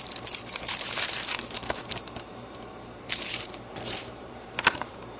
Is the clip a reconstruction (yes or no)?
yes